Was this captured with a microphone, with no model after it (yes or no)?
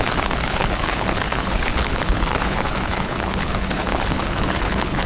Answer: no